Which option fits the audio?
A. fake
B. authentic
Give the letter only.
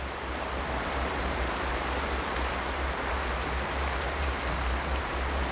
A